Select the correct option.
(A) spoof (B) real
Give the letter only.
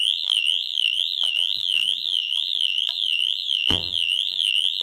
A